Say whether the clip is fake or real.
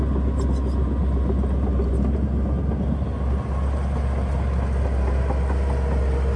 real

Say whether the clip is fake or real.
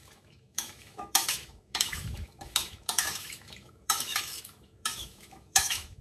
fake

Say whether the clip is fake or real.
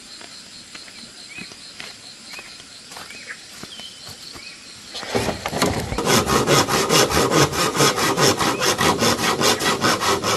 real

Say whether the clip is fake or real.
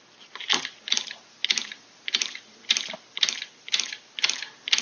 real